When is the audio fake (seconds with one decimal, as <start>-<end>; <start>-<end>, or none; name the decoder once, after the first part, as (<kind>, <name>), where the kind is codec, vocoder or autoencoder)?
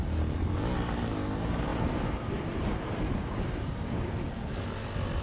1.7-4.0 (vocoder, BigVGAN v2)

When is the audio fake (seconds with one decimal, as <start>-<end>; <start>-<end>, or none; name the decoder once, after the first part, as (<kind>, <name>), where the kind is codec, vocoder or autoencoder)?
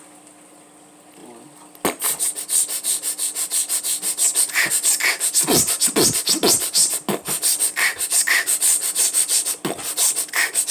8.8-9.5 (vocoder, BigVGAN v2)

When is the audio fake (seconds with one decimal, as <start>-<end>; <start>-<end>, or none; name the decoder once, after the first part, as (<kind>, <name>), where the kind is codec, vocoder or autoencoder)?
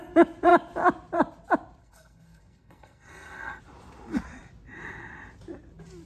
1.8-3.6 (codec, SNAC)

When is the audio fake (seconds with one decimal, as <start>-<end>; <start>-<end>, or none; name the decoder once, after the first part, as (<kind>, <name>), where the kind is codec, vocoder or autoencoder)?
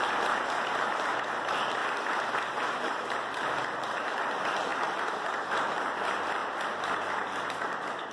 0.0-1.8 (vocoder, BigVGAN v2); 2.5-6.4; 7.0-8.1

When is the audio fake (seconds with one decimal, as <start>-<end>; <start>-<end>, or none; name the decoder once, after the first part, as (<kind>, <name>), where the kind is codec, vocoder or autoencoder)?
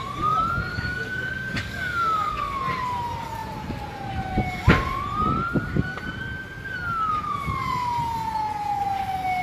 0.7-2.6 (codec, DAC)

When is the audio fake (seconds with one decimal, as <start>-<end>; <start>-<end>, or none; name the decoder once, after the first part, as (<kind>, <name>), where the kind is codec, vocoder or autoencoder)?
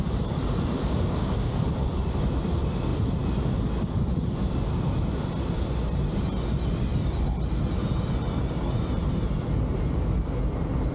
0.8-1.6 (codec, DAC)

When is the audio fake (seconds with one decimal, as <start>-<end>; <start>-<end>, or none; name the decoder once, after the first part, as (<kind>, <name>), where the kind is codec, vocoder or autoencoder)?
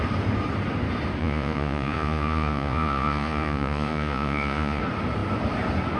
1.2-4.8 (vocoder, Vocos)